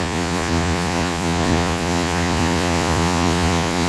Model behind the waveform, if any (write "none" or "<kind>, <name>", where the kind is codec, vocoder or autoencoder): vocoder, Vocos